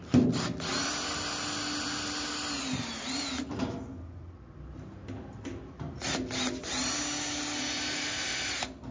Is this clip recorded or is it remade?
recorded